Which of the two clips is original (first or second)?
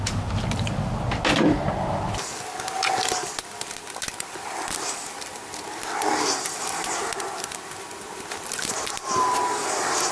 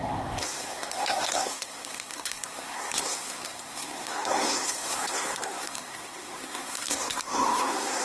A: first